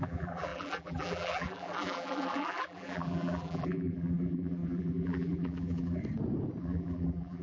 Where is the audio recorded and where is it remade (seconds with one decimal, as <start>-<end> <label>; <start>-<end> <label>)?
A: 0.0-6.0 remade; 6.0-6.6 recorded; 6.6-7.4 remade